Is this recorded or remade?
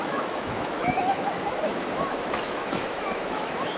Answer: remade